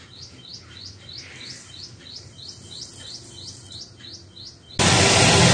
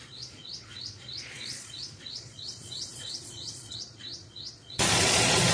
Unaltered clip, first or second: first